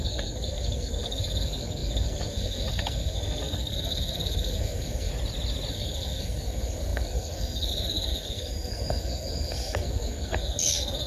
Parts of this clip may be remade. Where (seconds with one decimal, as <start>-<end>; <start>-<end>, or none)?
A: 0.0-5.1; 5.7-11.1